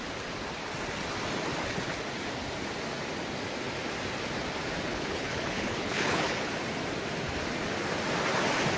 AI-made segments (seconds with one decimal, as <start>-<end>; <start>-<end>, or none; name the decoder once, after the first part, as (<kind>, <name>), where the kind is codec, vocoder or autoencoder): 4.9-6.5 (codec, HILCodec)